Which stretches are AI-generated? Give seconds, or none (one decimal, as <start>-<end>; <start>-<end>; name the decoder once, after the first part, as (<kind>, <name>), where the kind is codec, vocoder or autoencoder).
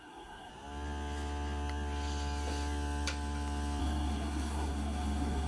0.0-0.5 (codec, SNAC); 3.8-5.5